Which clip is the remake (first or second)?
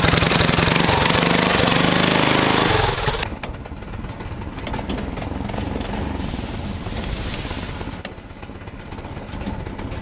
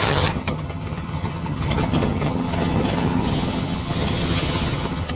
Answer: second